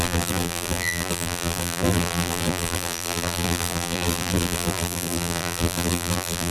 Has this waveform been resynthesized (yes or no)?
yes